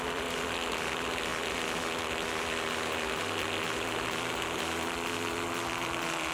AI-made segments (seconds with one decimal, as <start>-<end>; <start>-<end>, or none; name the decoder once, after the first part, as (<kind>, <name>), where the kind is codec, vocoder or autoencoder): none

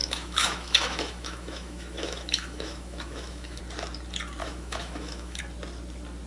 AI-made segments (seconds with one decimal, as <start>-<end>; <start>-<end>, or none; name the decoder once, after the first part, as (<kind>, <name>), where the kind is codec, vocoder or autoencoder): 0.0-3.6 (autoencoder, DAC-VAE); 4.4-5.4

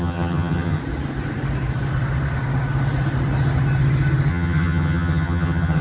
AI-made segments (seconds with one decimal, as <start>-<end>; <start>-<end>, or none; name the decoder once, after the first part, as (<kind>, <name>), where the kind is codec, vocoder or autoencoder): 0.0-0.8 (vocoder, HiFi-GAN); 4.3-5.8

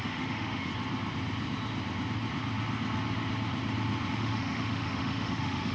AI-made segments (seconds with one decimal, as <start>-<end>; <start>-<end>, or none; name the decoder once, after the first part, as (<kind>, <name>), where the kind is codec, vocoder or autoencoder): 0.0-0.7 (autoencoder, DAC-VAE); 4.1-5.7

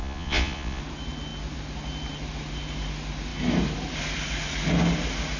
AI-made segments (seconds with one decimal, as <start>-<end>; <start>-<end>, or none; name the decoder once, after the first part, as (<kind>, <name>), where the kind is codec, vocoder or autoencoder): 0.0-0.8 (vocoder, Vocos)